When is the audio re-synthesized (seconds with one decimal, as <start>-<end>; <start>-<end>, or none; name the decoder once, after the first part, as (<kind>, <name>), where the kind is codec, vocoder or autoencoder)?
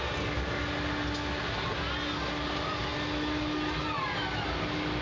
none